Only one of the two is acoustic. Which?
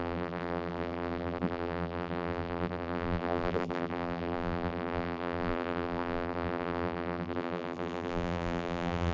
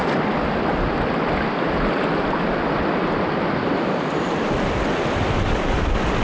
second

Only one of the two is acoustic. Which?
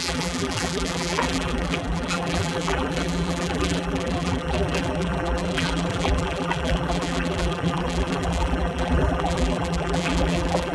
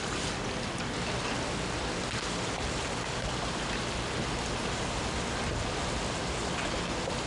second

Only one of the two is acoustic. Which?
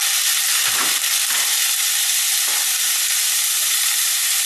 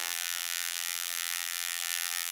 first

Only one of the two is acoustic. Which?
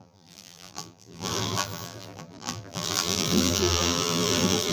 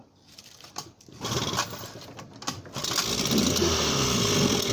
second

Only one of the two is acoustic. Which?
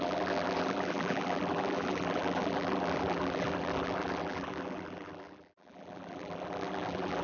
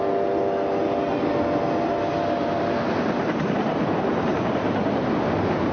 second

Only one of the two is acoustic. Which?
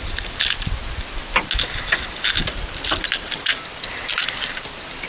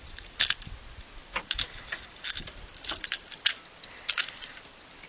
first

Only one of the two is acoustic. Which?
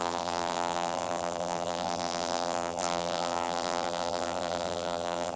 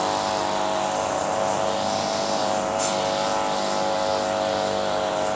second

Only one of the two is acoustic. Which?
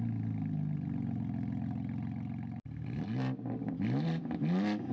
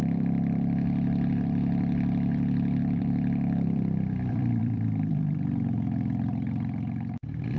first